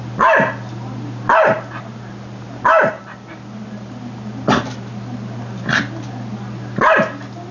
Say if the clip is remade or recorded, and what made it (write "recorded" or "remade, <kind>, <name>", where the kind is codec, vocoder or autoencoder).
recorded